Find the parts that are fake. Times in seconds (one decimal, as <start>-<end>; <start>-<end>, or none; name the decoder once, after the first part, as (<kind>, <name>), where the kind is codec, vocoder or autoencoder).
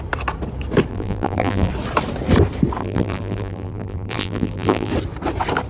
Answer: 0.9-1.7 (vocoder, BigVGAN v2); 2.8-4.9